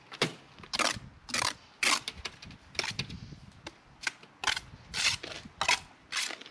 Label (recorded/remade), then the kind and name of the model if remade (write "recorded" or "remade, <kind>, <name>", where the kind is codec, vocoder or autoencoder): recorded